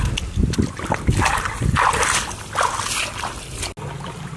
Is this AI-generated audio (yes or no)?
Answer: no